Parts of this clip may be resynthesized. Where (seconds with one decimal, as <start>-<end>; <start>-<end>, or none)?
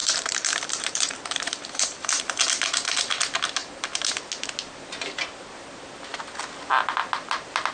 0.0-2.2; 3.6-4.1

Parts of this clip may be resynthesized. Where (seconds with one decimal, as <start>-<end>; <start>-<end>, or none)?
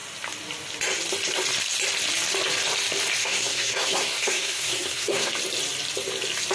3.2-5.3